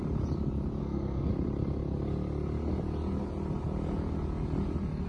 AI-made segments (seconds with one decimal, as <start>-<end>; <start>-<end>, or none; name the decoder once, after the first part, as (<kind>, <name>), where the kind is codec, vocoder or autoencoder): 0.8-1.3 (codec, SNAC)